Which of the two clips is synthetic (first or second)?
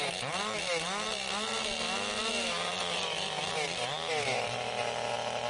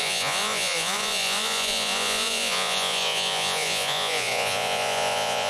second